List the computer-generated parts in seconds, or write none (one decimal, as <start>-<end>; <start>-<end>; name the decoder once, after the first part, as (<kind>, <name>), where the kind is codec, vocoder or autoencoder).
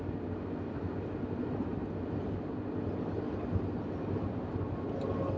none